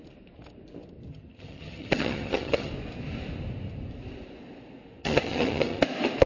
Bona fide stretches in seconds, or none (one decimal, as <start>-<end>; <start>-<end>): 0.0-1.1; 2.7-5.0; 5.8-6.3